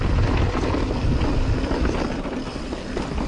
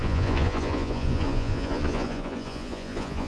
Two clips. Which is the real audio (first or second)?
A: first